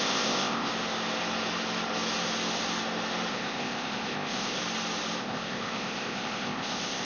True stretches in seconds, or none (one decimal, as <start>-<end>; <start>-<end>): 0.7-3.3; 4.6-5.2